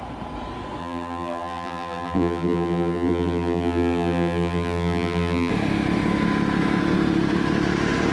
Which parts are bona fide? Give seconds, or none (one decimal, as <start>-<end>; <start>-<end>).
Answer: 0.0-0.8; 5.5-8.1